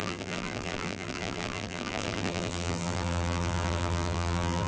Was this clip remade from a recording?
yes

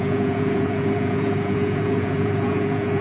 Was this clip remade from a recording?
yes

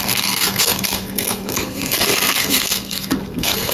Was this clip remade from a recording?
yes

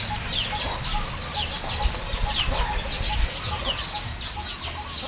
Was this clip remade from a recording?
no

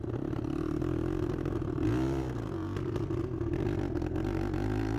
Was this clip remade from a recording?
no